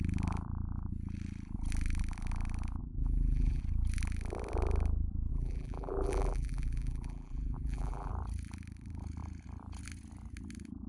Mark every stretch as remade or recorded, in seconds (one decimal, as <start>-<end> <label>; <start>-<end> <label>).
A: 0.0-2.8 recorded; 2.8-3.6 remade; 3.6-5.3 recorded; 5.3-8.1 remade; 8.1-10.9 recorded